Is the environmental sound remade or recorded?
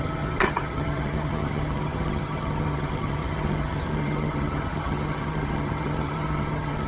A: remade